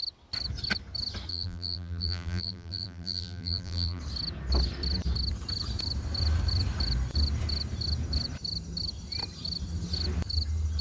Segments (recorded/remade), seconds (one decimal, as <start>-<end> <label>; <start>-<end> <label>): 0.0-1.3 recorded; 1.3-4.0 remade; 4.0-10.8 recorded